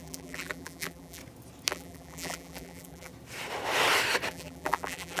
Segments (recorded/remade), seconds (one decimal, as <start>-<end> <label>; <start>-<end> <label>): 0.0-1.2 remade; 1.2-1.7 recorded; 1.7-3.1 remade; 3.1-4.3 recorded; 4.3-5.2 remade